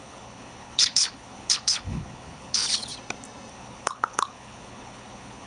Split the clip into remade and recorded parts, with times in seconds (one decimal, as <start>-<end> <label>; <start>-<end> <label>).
0.0-2.9 remade; 2.9-3.5 recorded; 3.5-5.5 remade